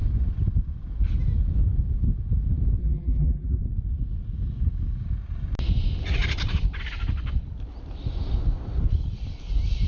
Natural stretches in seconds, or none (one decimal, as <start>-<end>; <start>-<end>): 0.0-2.8; 3.6-9.9